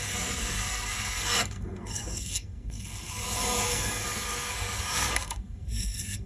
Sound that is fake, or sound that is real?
fake